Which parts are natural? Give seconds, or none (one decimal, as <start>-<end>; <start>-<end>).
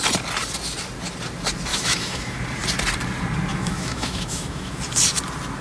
0.0-1.7; 2.4-3.5; 4.8-5.6